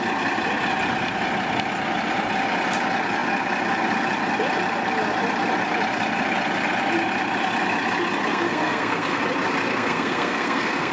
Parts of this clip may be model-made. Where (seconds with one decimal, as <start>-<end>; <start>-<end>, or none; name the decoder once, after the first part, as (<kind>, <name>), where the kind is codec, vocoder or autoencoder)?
8.3-9.2 (codec, SNAC); 9.7-10.9